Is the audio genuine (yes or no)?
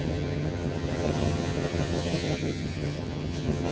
no